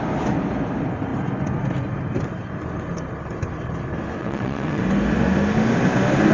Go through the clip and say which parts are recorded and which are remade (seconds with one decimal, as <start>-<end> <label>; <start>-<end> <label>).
0.0-4.2 recorded; 4.2-4.8 remade; 4.8-6.3 recorded

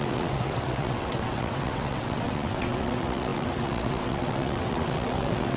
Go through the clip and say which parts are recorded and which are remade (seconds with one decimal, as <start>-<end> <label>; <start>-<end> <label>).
0.0-5.6 remade

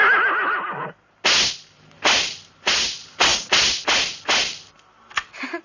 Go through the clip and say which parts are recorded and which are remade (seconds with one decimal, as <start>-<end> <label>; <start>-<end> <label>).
0.0-5.6 recorded

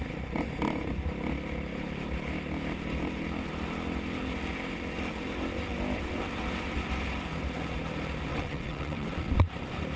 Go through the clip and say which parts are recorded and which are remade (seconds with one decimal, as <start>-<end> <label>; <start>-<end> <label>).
0.0-8.3 recorded; 8.3-9.3 remade; 9.3-10.0 recorded

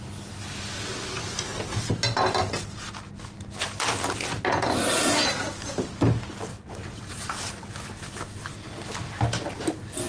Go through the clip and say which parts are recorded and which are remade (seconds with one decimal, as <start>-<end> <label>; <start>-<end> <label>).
0.0-6.5 recorded; 6.5-7.5 remade; 7.5-10.1 recorded

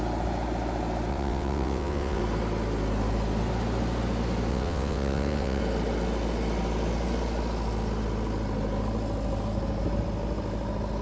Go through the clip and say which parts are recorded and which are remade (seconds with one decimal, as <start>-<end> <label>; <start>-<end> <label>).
0.0-1.1 recorded; 1.1-2.2 remade; 2.2-4.5 recorded; 4.5-5.6 remade; 5.6-11.0 recorded